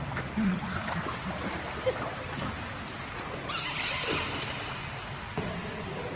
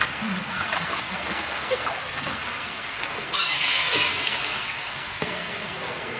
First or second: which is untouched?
first